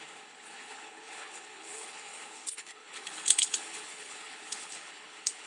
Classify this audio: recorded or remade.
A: remade